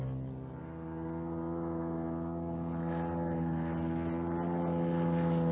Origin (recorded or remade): recorded